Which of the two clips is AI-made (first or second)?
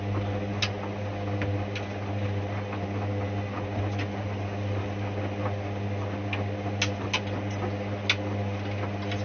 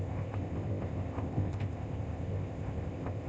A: second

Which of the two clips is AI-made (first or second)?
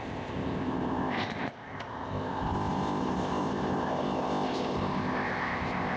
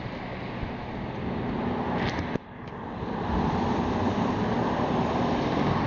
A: first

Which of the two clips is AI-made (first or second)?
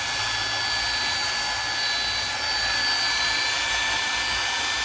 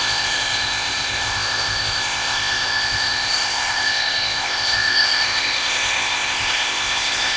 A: second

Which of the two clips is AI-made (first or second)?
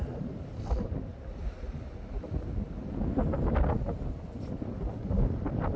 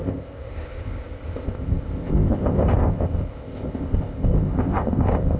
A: second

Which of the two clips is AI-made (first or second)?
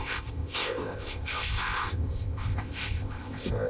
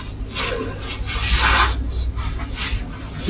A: first